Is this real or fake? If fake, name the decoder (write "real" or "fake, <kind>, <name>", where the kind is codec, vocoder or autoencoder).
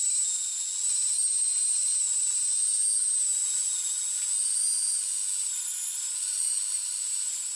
real